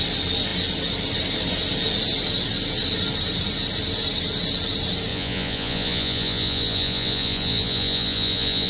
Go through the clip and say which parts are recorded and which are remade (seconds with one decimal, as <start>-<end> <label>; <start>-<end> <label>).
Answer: 0.0-5.1 recorded; 5.1-8.7 remade